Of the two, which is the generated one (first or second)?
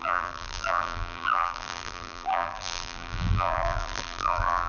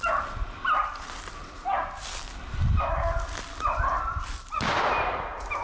first